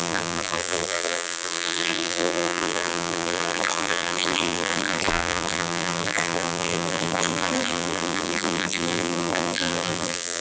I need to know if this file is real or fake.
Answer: fake